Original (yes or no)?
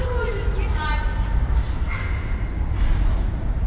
yes